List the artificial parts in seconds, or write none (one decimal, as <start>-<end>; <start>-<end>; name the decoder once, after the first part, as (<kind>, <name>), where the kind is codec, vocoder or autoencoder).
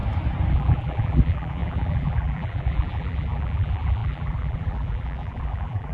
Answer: 0.5-5.9 (vocoder, BigVGAN v2)